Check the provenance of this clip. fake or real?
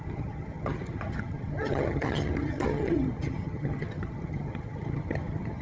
fake